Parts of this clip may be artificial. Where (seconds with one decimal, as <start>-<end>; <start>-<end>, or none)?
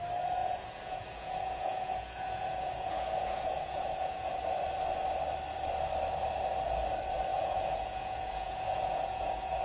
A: 0.4-4.3; 7.3-9.6